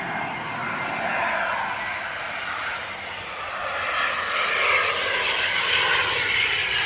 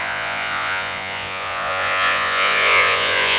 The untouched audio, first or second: first